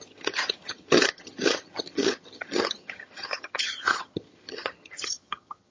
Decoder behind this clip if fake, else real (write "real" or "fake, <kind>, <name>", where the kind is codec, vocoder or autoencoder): fake, vocoder, HiFi-GAN